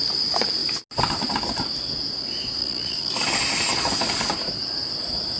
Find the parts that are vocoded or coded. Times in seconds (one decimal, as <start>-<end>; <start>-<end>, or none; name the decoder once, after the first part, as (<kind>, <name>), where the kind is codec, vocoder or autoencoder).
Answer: 2.6-3.1 (vocoder, Vocos)